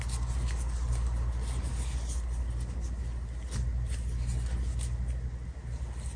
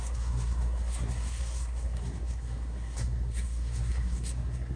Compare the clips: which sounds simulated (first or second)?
second